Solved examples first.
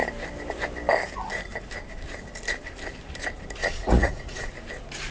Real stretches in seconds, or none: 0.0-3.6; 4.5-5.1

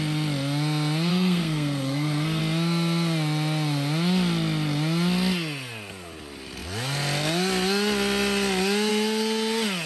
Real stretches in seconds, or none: 0.0-1.1; 2.4-9.9